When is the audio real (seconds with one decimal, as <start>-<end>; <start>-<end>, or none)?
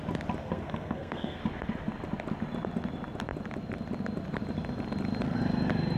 0.0-0.4; 1.4-6.0